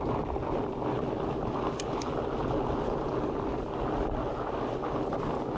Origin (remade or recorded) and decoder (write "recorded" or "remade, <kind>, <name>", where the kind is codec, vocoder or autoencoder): recorded